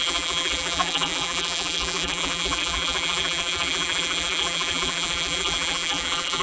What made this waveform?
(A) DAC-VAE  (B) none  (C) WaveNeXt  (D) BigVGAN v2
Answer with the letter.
D